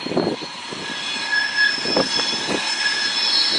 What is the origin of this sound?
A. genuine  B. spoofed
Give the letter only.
A